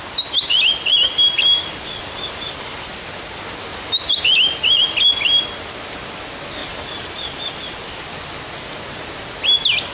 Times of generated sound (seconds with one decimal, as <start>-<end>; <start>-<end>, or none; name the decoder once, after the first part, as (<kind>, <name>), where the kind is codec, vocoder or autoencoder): 3.7-4.2 (vocoder, BigVGAN v2); 6.6-7.5